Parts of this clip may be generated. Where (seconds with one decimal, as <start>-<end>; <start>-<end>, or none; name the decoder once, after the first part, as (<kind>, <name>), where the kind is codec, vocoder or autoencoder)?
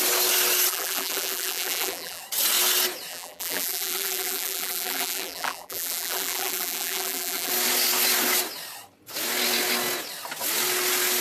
0.7-2.2 (vocoder, BigVGAN v2); 3.1-7.5